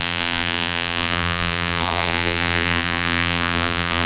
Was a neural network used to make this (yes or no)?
yes